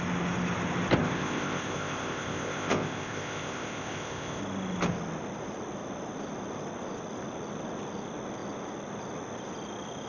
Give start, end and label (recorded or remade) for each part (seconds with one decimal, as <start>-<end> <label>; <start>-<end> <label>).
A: 0.0-1.0 recorded; 1.0-4.4 remade; 4.4-10.1 recorded